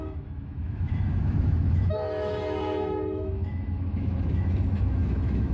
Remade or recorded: remade